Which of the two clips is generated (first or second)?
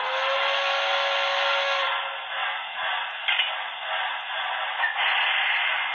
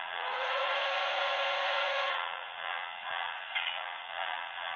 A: second